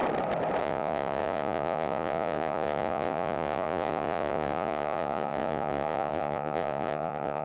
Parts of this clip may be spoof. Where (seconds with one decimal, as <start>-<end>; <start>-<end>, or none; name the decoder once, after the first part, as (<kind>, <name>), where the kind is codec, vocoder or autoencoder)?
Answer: 0.6-7.4 (vocoder, Vocos)